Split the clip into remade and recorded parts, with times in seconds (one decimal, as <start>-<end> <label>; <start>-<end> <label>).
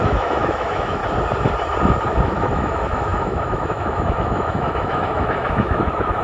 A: 0.0-1.0 remade; 1.0-2.1 recorded; 2.1-6.2 remade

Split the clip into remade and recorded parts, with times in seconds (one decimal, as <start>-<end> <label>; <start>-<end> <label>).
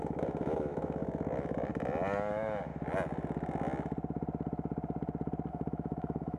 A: 0.0-1.7 remade; 1.7-2.3 recorded; 2.3-2.7 remade; 2.7-5.5 recorded; 5.5-6.4 remade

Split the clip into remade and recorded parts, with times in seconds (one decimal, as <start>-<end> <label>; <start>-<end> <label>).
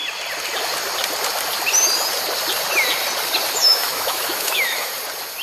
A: 0.0-3.6 recorded; 3.6-4.9 remade; 4.9-5.4 recorded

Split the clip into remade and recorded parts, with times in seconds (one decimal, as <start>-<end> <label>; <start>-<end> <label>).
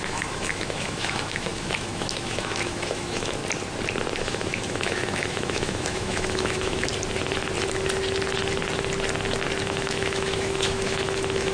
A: 0.0-3.4 remade; 3.4-4.2 recorded; 4.2-6.9 remade; 6.9-9.6 recorded; 9.6-11.5 remade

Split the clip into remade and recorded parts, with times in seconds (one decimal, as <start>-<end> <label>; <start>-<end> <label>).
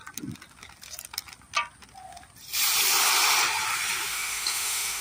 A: 0.0-4.1 recorded; 4.1-5.0 remade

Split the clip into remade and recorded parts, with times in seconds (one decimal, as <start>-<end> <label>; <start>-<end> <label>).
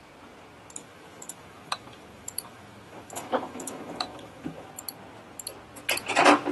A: 0.0-0.8 recorded; 0.8-4.7 remade; 4.7-6.5 recorded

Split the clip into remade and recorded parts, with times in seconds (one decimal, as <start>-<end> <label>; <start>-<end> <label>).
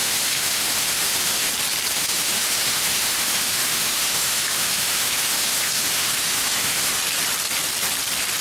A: 0.0-1.5 remade; 1.5-1.9 recorded; 1.9-6.9 remade; 6.9-8.4 recorded